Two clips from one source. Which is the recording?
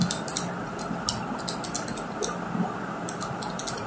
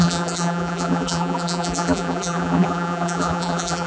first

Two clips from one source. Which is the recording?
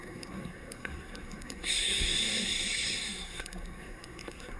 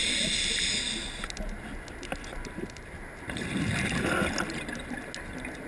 second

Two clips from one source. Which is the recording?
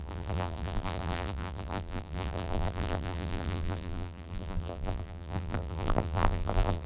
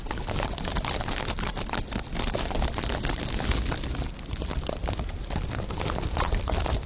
second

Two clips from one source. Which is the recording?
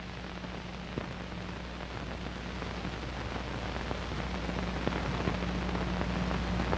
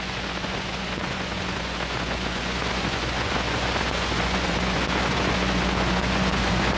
first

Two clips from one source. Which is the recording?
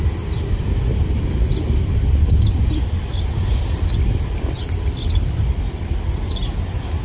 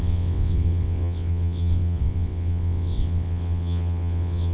first